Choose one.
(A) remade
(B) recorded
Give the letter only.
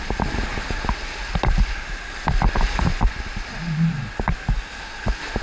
B